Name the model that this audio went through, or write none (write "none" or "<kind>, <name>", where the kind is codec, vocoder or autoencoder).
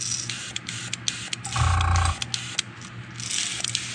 none